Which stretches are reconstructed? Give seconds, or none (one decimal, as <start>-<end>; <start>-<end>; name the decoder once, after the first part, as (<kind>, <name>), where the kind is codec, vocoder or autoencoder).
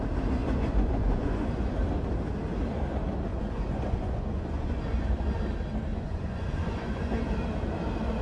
0.4-1.7 (vocoder, Vocos); 3.3-4.8; 5.9-7.2